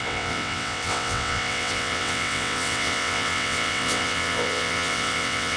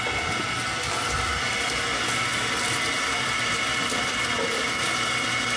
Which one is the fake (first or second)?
first